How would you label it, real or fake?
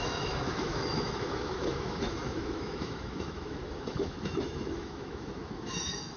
fake